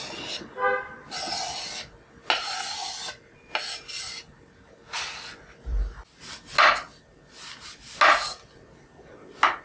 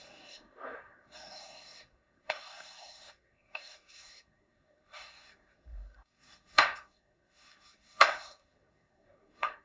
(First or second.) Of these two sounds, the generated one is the second